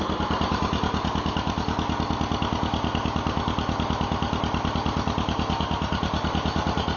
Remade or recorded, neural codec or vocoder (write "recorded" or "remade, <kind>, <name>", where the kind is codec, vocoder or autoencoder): recorded